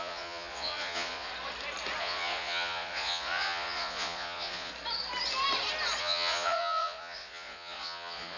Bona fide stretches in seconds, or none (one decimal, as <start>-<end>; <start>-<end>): 1.3-2.0; 4.7-6.0